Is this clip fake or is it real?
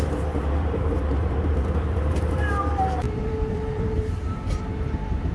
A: fake